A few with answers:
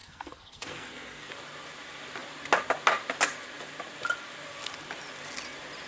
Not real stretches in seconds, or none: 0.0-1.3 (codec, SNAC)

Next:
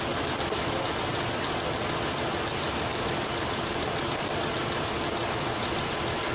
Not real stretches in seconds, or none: 1.1-4.6 (vocoder, BigVGAN v2); 5.2-6.3

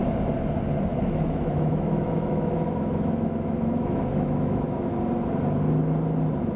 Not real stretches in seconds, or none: 0.9-4.9 (autoencoder, DAC-VAE)

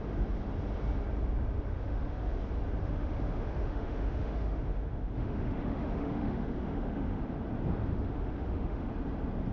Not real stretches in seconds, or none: 1.7-2.4 (autoencoder, DAC-VAE); 2.8-7.2; 7.9-8.9

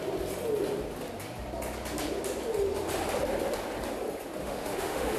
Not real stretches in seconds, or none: 4.4-5.2 (autoencoder, DAC-VAE)